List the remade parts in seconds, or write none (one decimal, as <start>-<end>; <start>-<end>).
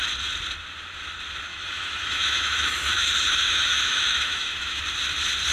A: 1.5-4.8